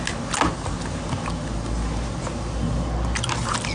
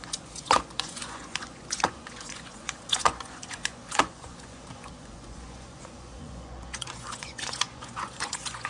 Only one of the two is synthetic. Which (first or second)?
second